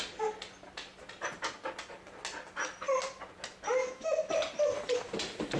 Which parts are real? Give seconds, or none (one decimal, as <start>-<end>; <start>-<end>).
0.0-3.8; 4.3-5.6

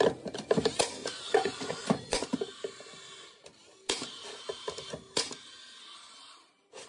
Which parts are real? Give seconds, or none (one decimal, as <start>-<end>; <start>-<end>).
0.0-1.0; 2.2-6.9

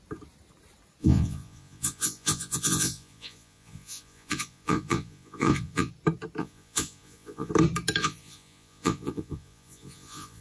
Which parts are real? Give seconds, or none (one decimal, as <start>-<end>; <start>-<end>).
0.0-1.0; 5.9-6.4; 7.5-8.0

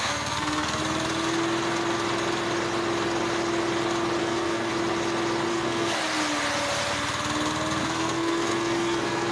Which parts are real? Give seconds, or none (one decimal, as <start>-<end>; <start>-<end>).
0.8-4.2; 4.7-5.5; 6.0-7.8

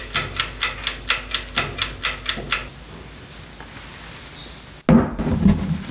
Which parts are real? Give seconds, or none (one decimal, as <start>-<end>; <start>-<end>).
0.0-5.9

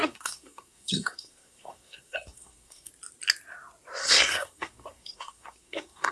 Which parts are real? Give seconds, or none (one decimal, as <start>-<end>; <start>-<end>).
2.9-4.0